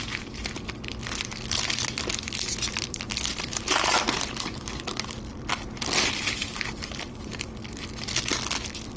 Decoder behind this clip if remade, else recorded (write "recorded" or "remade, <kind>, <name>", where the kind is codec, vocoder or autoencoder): remade, vocoder, BigVGAN v2